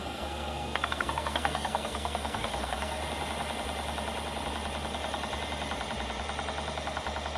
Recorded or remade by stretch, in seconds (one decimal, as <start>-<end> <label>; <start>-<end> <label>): 0.0-3.0 remade; 3.0-7.4 recorded